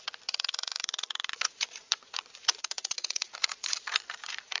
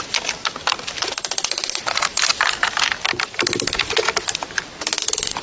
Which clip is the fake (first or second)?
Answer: first